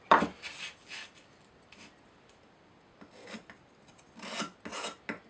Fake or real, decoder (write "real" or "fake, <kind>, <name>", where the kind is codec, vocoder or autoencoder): real